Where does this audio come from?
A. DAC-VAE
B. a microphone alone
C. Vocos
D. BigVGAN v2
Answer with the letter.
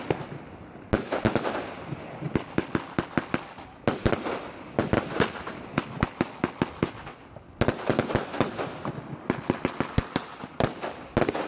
B